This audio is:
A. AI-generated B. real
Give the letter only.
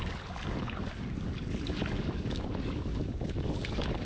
A